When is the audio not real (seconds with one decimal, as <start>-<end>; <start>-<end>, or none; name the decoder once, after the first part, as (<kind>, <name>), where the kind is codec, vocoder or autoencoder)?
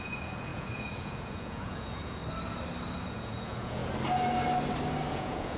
0.0-2.2 (vocoder, Vocos); 3.1-3.8; 5.1-5.6